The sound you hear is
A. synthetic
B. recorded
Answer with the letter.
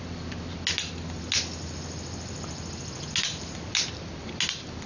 B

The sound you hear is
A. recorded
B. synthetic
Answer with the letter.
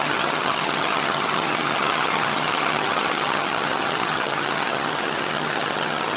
B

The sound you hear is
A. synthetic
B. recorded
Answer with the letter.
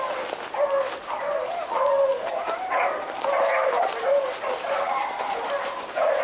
B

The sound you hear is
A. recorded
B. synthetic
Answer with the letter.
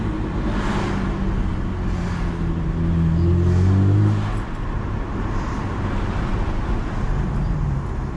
A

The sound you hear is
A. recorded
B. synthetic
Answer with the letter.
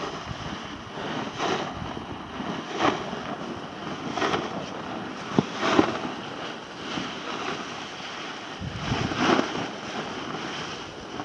A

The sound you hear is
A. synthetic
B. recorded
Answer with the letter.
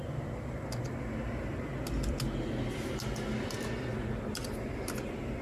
B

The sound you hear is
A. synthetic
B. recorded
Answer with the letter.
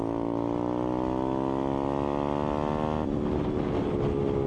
B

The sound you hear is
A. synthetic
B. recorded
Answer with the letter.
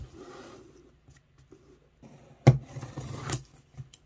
B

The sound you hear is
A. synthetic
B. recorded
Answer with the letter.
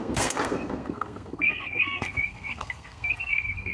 A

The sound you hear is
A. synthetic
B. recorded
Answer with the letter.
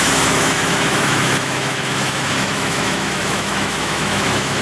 A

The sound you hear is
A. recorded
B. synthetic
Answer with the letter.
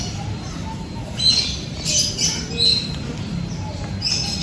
A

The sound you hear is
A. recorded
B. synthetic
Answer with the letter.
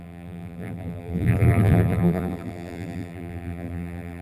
B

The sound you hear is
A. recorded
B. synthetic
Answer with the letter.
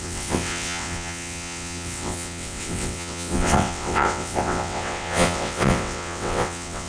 B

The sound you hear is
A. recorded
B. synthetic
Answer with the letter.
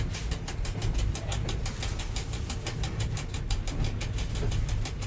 A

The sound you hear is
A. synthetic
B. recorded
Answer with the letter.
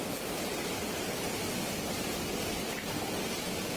B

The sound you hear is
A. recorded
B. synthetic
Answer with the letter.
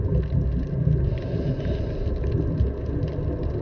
A